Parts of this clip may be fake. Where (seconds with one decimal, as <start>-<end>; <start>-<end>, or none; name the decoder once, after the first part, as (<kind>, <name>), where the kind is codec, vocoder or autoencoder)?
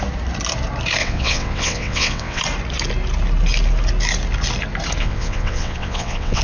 1.0-2.4 (vocoder, WaveNeXt); 5.0-6.4